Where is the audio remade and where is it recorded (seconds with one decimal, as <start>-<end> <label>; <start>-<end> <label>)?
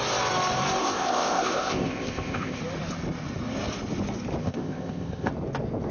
0.0-0.8 recorded; 0.8-2.6 remade; 2.6-4.4 recorded; 4.4-5.3 remade; 5.3-5.9 recorded